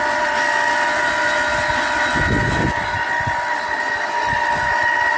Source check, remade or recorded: recorded